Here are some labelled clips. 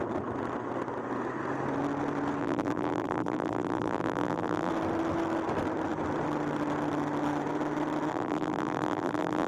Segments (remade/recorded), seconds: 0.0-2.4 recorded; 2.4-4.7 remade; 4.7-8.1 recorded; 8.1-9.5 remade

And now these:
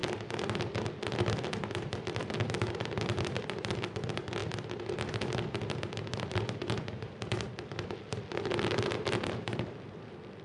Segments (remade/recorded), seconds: 0.0-1.7 recorded; 1.7-4.4 remade; 4.4-5.3 recorded; 5.3-10.4 remade